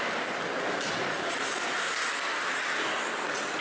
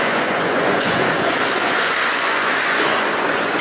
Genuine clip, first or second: first